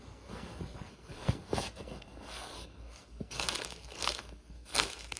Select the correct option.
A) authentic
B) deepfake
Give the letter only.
B